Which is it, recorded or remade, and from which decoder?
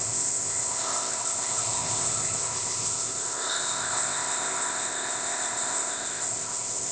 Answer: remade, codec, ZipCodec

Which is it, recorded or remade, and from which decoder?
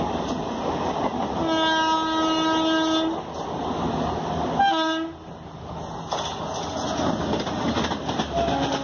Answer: recorded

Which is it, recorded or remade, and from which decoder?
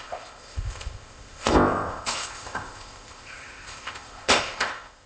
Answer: remade, codec, ZipCodec